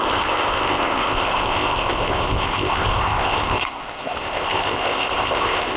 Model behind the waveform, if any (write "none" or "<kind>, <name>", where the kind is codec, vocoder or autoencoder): codec, ZipCodec